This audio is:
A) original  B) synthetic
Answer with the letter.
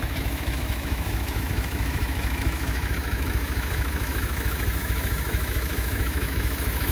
B